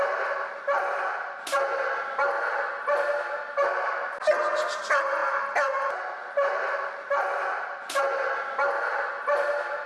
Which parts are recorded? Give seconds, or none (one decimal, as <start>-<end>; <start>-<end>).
0.0-9.9